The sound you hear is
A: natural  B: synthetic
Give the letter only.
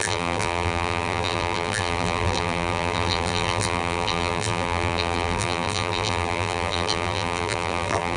B